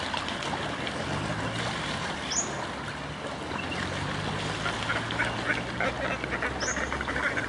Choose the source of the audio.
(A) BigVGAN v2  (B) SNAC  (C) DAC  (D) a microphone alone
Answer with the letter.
D